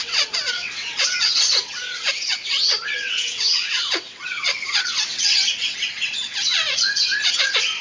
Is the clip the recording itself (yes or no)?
no